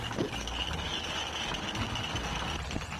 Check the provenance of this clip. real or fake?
real